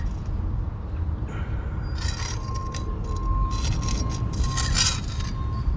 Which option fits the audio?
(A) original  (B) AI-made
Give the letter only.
A